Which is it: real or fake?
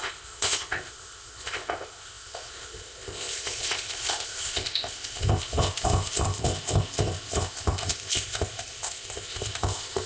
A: fake